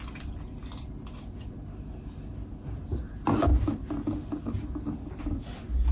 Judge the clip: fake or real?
real